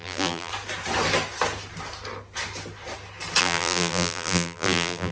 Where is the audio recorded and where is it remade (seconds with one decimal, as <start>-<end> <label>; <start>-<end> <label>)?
0.0-0.5 remade; 0.5-3.4 recorded; 3.4-5.1 remade